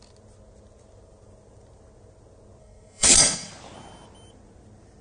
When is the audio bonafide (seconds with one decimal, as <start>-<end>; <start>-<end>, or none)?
0.0-2.6; 3.5-5.0